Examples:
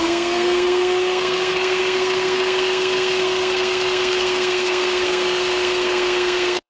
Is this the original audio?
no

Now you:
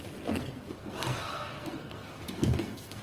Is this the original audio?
no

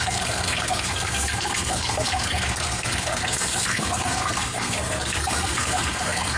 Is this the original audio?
no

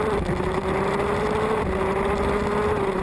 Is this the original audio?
yes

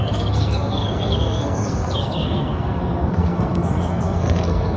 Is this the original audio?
no